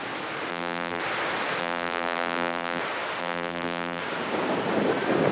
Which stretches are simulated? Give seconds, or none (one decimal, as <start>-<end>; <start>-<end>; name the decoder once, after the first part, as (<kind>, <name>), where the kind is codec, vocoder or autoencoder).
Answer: 0.5-1.0 (vocoder, BigVGAN v2); 1.6-2.8; 3.2-4.0